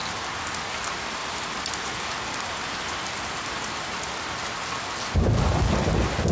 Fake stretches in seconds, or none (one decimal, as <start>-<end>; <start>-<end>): none